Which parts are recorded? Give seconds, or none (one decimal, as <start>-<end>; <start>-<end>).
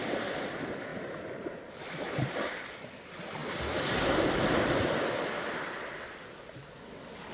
0.0-7.3